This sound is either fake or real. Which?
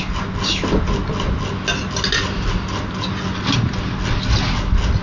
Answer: real